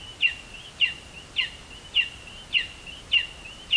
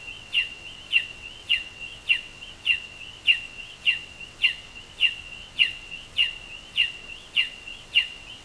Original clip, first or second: first